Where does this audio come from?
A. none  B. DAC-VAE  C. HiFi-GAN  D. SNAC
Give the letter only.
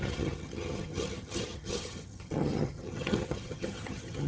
C